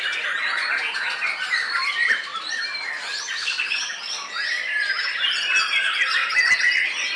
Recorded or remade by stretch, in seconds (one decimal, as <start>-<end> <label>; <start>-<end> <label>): 0.0-2.3 recorded; 2.3-4.0 remade; 4.0-7.2 recorded

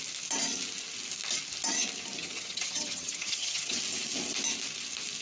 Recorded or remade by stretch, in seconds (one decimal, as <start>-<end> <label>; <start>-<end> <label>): 0.0-2.2 recorded; 2.2-3.8 remade; 3.8-5.2 recorded